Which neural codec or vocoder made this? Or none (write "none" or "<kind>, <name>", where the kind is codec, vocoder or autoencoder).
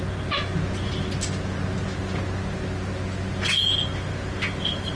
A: none